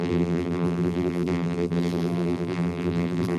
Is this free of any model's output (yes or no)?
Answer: no